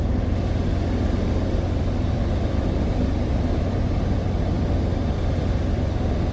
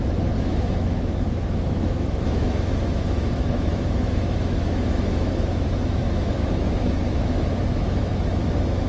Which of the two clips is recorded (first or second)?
first